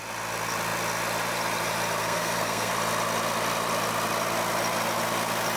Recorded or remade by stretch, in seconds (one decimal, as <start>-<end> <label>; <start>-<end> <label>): 0.0-2.0 recorded; 2.0-2.7 remade; 2.7-5.6 recorded